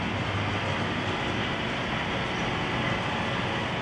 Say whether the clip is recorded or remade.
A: recorded